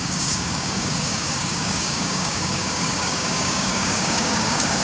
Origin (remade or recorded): remade